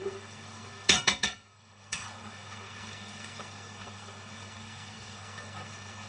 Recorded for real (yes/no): no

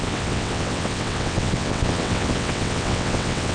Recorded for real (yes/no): no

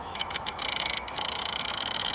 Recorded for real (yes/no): no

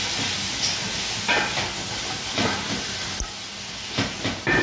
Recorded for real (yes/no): yes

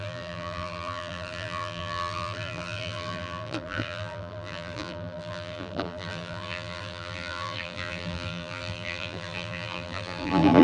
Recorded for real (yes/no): no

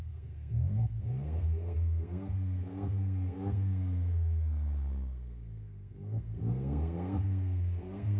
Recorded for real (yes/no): no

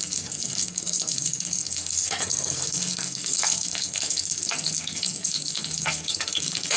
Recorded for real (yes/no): no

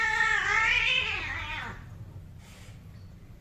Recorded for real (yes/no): yes